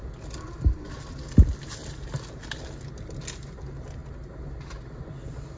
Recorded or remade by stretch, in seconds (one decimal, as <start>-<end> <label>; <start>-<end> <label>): 0.0-5.6 recorded